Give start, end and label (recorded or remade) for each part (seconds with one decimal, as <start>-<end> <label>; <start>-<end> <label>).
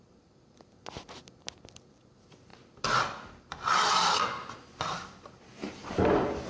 0.0-6.5 recorded